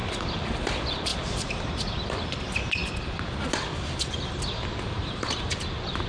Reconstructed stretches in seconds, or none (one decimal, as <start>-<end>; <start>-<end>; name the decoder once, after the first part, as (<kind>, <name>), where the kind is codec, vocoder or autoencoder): 0.0-0.7 (vocoder, BigVGAN v2); 1.1-1.8; 5.0-5.6